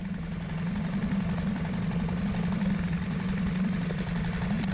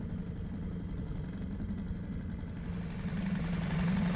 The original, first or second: second